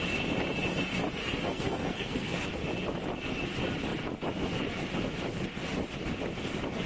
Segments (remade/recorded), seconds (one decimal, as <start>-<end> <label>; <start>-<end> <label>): 0.0-1.2 recorded; 1.2-2.5 remade; 2.5-6.9 recorded